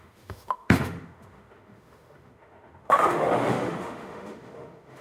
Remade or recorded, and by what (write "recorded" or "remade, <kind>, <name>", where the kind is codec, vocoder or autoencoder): remade, autoencoder, DAC-VAE